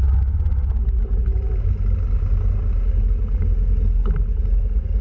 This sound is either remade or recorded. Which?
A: recorded